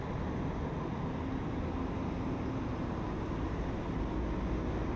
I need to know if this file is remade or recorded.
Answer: recorded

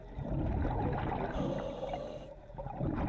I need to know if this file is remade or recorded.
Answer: recorded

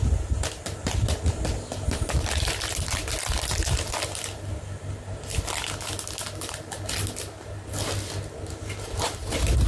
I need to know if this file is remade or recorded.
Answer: recorded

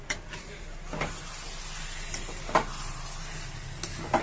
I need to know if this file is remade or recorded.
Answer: recorded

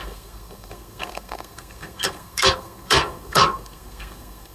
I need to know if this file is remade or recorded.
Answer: remade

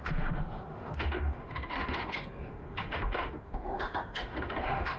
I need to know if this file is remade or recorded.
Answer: remade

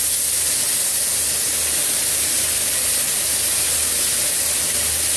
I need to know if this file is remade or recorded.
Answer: recorded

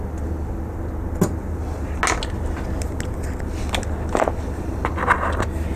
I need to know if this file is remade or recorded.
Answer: recorded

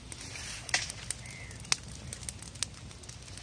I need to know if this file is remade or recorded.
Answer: recorded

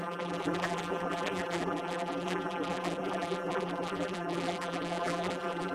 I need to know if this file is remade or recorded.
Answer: remade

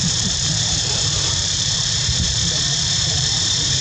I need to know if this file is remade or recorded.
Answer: remade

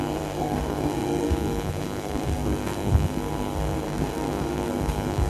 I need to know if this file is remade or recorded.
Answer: remade